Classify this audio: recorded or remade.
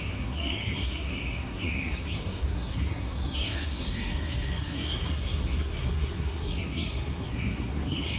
remade